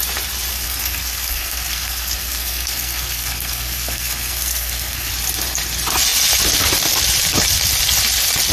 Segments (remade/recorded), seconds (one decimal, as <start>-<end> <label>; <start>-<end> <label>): 0.0-0.5 recorded; 0.5-5.1 remade; 5.1-8.5 recorded